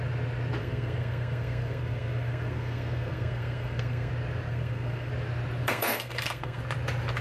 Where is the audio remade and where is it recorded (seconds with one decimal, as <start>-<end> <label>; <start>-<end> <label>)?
0.0-0.6 recorded; 0.6-4.1 remade; 4.1-4.5 recorded; 4.5-5.1 remade; 5.1-5.6 recorded; 5.6-6.6 remade; 6.6-7.2 recorded